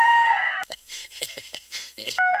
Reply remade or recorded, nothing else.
remade